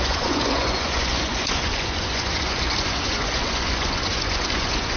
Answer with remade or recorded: remade